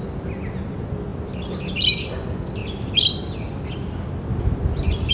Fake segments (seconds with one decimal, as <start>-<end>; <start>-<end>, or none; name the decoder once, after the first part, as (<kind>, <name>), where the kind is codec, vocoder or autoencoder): none